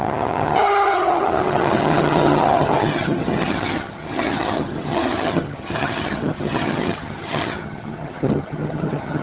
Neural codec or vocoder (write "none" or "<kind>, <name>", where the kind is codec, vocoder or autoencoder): vocoder, HiFi-GAN